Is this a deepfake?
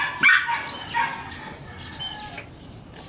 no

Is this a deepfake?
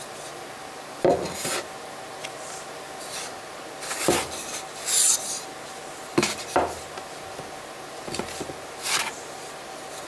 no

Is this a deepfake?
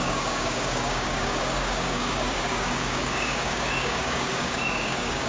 yes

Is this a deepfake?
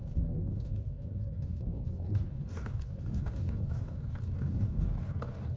yes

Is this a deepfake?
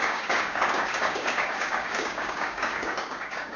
yes